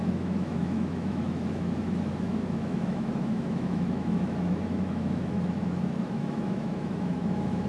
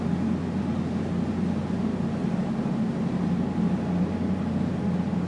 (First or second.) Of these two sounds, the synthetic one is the first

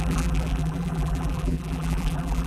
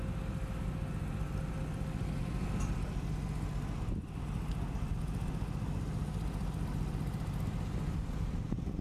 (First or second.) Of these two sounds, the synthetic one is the first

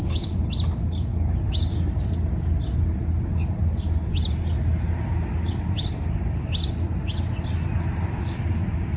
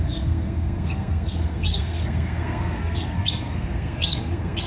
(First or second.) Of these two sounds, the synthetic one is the second